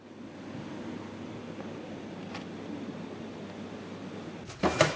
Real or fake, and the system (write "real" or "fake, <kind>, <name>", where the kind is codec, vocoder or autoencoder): real